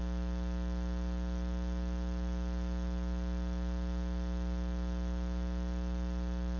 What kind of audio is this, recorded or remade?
recorded